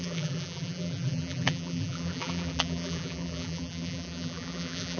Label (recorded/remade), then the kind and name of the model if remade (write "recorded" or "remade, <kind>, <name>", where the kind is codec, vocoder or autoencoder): remade, vocoder, BigVGAN v2